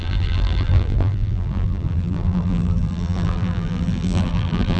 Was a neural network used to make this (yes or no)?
yes